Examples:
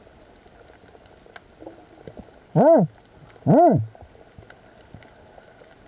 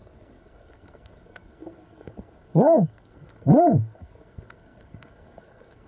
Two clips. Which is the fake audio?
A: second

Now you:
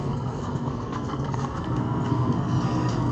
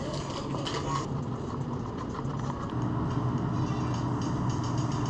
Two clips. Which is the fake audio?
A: first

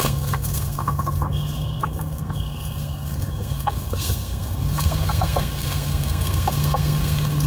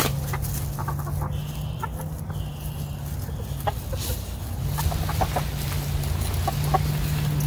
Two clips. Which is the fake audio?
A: first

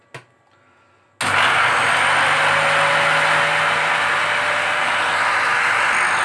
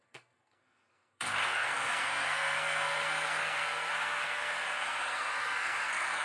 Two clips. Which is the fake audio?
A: second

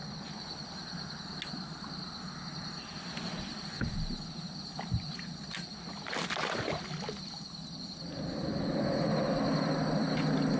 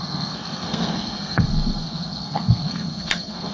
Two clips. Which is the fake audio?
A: second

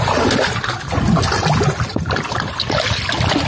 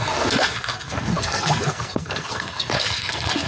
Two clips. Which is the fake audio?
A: second